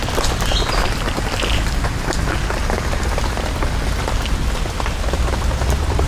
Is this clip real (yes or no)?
yes